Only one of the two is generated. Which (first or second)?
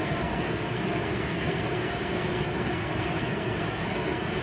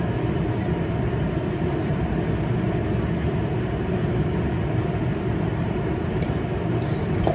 first